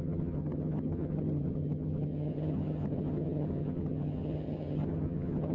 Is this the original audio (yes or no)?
no